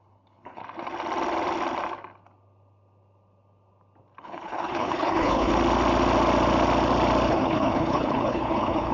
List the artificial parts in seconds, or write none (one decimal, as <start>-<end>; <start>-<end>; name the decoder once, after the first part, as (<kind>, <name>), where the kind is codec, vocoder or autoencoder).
0.0-0.6 (codec, HILCodec); 4.2-5.5; 7.3-8.9